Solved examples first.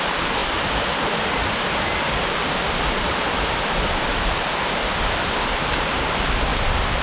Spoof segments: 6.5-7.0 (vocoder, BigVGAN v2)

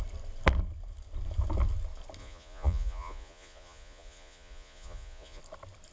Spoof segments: 2.2-5.4 (vocoder, Vocos)

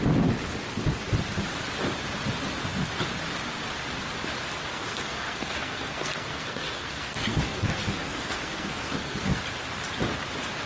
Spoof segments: 4.7-9.4 (codec, SNAC)

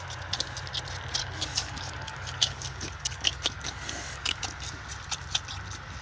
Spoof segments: 1.2-4.4 (codec, DAC)